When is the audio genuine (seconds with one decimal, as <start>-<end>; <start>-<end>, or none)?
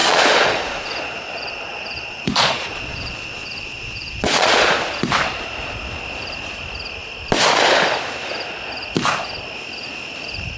4.7-10.6